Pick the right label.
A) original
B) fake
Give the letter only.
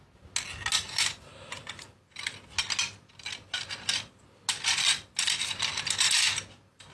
A